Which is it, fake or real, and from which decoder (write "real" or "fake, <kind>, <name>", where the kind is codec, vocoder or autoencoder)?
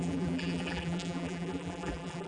fake, vocoder, BigVGAN v2